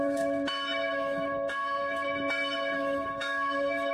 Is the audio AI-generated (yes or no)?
yes